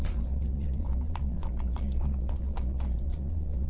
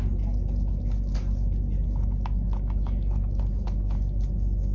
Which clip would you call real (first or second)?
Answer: second